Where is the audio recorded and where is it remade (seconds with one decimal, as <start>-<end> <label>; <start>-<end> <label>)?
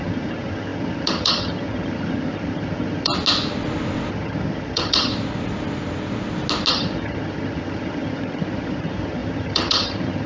0.0-3.1 remade; 3.1-4.1 recorded; 4.1-5.1 remade; 5.1-6.7 recorded; 6.7-10.3 remade